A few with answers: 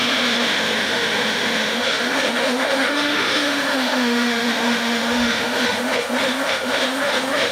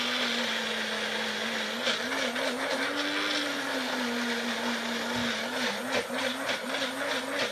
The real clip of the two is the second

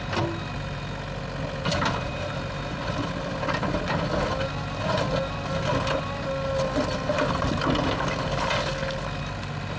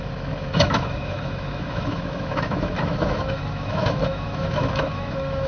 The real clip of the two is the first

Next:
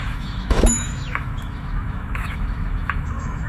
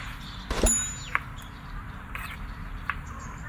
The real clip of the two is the second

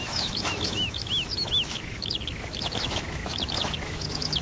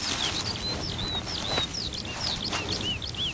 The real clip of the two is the second